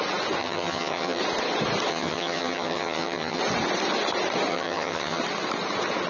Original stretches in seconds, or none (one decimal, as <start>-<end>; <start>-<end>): 0.0-0.4; 1.2-1.9; 3.4-4.5; 5.2-6.1